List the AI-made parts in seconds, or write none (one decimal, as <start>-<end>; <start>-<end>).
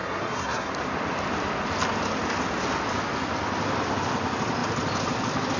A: 0.0-0.7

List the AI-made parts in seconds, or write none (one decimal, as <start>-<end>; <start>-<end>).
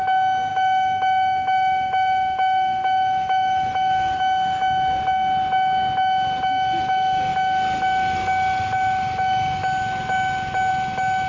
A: 0.5-4.2